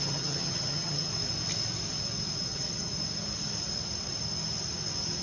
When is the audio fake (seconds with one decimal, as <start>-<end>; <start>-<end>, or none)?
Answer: 0.0-1.1; 2.4-2.9